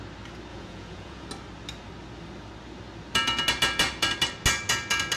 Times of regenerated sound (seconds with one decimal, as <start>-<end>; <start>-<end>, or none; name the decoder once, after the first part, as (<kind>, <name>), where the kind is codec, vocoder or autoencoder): 0.5-1.3 (vocoder, Vocos)